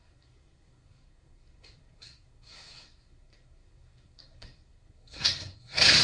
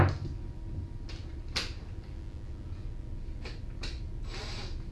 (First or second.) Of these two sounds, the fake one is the first